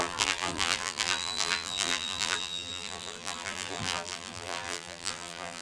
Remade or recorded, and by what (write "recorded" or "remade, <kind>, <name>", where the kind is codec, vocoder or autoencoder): remade, vocoder, BigVGAN v2